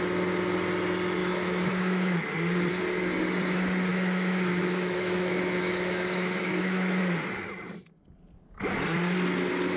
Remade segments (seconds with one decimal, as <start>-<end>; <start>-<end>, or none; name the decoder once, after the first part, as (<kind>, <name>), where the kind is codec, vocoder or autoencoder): 1.2-2.2 (autoencoder, DAC-VAE); 3.9-7.0